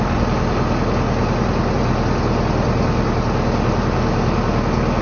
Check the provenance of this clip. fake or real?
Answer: real